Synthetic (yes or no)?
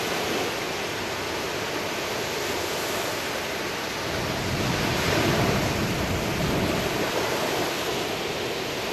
no